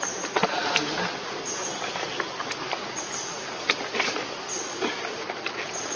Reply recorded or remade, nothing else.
recorded